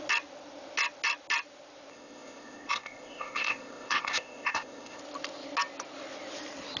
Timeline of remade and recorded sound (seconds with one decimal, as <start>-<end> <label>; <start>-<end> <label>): 0.0-1.9 recorded; 1.9-5.0 remade; 5.0-6.8 recorded